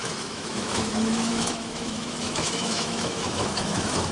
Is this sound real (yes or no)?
no